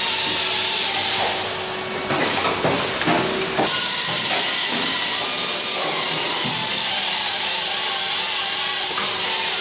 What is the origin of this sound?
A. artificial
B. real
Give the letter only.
B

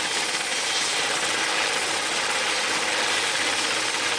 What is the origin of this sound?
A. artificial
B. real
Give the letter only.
B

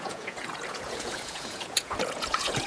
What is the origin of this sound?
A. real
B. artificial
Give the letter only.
B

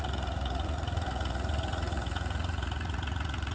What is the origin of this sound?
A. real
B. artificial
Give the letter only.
B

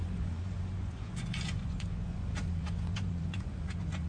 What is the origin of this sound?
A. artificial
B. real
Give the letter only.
A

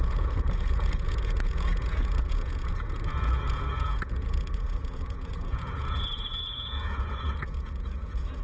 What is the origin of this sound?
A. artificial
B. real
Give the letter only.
A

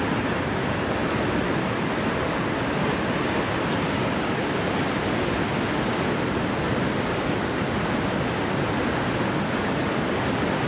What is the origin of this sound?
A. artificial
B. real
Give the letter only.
B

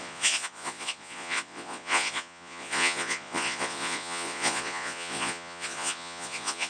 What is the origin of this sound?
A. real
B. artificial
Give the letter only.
B